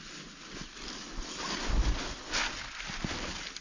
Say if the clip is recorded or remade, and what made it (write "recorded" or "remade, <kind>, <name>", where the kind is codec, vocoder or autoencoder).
recorded